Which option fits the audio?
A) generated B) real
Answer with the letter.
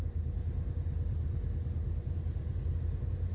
B